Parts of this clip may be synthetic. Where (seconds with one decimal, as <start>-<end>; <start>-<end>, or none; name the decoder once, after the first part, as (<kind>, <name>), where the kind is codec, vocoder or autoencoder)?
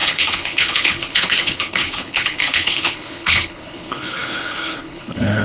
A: 0.0-5.4 (codec, HILCodec)